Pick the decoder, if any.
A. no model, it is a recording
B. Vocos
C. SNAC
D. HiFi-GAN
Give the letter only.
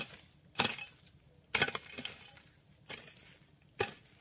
A